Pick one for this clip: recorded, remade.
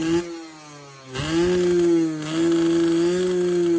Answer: recorded